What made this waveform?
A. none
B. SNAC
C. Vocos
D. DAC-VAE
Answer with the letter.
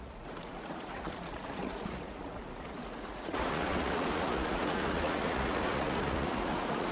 C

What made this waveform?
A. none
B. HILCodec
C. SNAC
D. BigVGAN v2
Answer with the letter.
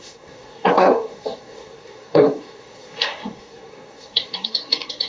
C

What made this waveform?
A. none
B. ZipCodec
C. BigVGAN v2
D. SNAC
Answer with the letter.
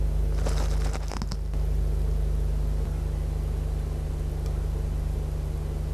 A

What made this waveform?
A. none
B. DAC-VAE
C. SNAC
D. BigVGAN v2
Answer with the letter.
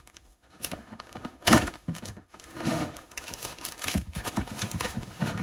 B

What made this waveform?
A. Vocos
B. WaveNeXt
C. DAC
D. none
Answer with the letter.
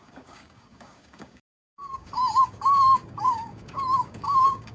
C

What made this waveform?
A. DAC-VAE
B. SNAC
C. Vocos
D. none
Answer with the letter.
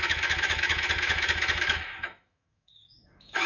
A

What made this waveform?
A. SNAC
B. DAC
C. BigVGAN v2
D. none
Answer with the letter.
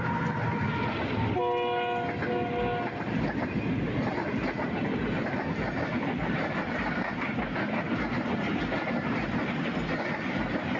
D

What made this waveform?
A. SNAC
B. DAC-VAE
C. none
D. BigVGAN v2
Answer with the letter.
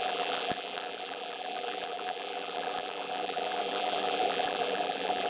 D